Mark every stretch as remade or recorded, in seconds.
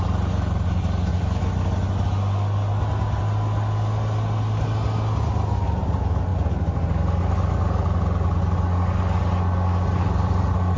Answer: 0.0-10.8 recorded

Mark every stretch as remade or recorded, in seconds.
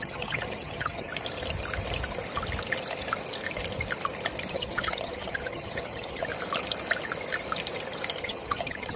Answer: 0.0-1.1 remade; 1.1-4.5 recorded; 4.5-6.3 remade; 6.3-8.2 recorded; 8.2-9.0 remade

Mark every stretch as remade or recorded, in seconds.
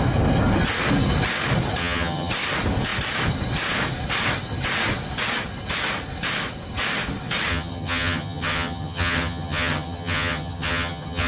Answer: 0.0-1.8 recorded; 1.8-2.3 remade; 2.3-7.5 recorded; 7.5-11.3 remade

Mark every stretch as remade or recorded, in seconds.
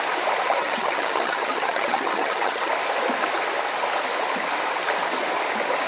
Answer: 0.0-0.4 recorded; 0.4-2.7 remade; 2.7-5.9 recorded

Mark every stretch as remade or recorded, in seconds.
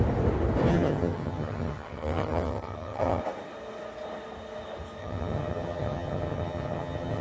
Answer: 0.0-0.7 recorded; 0.7-3.2 remade; 3.2-5.0 recorded; 5.0-7.2 remade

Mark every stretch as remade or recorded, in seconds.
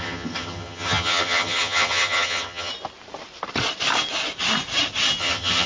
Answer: 0.0-2.7 remade; 2.7-5.2 recorded; 5.2-5.7 remade